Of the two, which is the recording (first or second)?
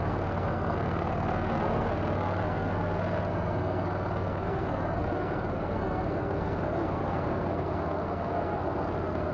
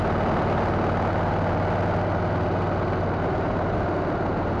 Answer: second